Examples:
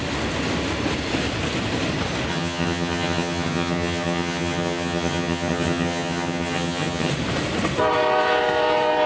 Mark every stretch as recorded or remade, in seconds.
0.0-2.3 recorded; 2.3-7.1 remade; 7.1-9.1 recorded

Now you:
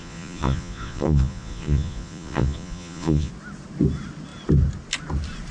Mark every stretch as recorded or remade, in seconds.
0.0-3.3 remade; 3.3-5.5 recorded

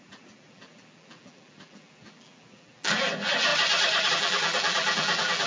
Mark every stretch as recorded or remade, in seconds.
0.0-3.5 remade; 3.5-4.1 recorded; 4.1-5.5 remade

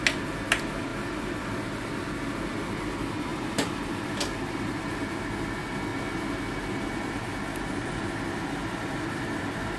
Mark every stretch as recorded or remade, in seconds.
0.0-0.9 recorded; 0.9-1.5 remade; 1.5-3.3 recorded; 3.3-3.8 remade; 3.8-9.8 recorded

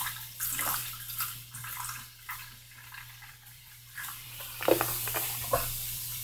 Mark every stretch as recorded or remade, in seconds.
0.0-0.8 remade; 0.8-3.3 recorded; 3.3-6.2 remade